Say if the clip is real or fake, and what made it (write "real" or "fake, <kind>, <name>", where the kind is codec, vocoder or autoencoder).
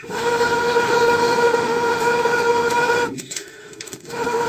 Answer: fake, autoencoder, DAC-VAE